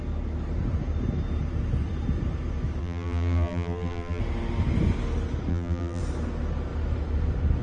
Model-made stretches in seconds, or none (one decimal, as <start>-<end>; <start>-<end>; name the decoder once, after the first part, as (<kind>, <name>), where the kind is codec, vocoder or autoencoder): 2.8-4.2 (vocoder, BigVGAN v2); 5.5-6.0